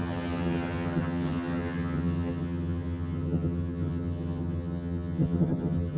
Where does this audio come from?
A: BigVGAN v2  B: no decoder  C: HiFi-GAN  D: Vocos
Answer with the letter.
C